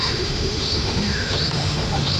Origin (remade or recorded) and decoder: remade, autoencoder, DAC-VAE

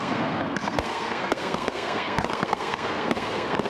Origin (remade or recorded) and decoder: remade, codec, SNAC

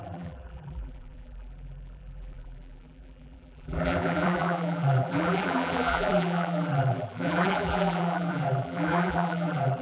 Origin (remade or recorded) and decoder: remade, vocoder, BigVGAN v2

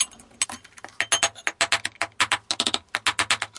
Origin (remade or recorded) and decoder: recorded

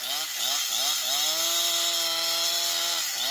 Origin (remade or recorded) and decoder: recorded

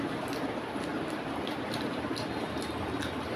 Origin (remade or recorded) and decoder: recorded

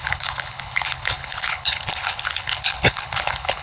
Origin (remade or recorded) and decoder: remade, codec, HILCodec